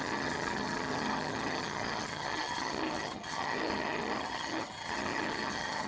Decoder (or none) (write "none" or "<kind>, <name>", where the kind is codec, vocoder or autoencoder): vocoder, HiFi-GAN